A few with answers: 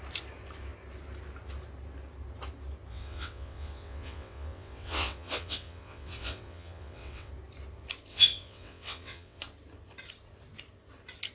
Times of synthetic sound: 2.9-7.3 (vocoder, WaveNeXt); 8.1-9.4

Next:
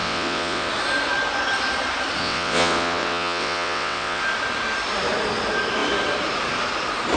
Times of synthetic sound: 0.0-0.7 (vocoder, WaveNeXt); 2.2-4.2

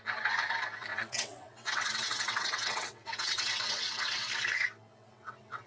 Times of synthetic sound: 0.9-4.3 (vocoder, WaveNeXt); 4.9-5.7

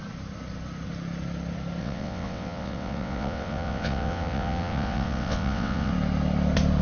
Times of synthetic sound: 1.8-5.9 (vocoder, WaveNeXt)

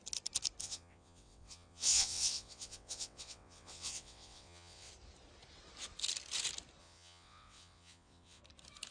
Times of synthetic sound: 0.6-4.9 (vocoder, WaveNeXt); 6.8-8.4

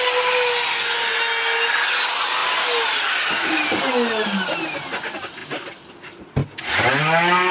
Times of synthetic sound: none

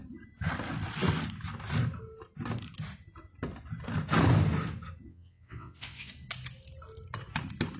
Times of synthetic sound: 5.1-6.1 (vocoder, WaveNeXt)

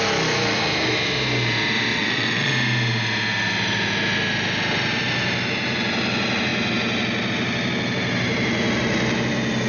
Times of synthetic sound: 1.9-2.5 (vocoder, WaveNeXt)